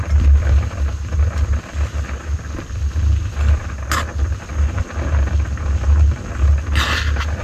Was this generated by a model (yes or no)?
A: no